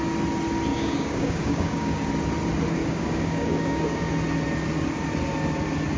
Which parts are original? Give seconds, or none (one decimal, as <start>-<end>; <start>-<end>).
0.0-0.7; 2.1-2.8; 4.1-6.0